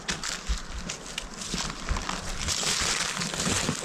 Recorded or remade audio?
recorded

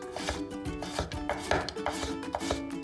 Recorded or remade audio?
recorded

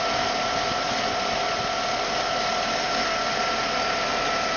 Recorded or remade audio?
recorded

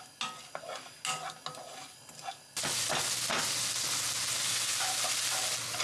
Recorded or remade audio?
recorded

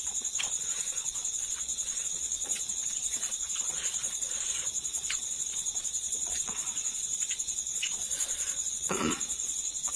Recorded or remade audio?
remade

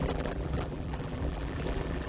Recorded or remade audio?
remade